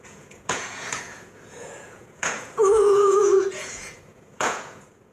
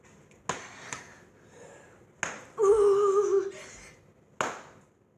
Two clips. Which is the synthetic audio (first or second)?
first